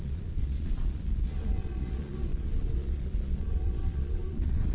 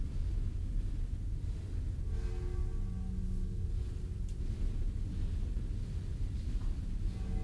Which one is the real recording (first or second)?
second